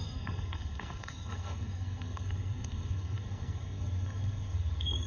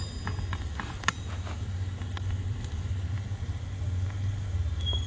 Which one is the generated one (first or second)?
first